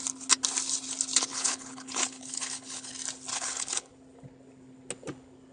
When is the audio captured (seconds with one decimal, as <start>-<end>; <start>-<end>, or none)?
0.0-1.3; 2.9-3.3; 3.9-5.5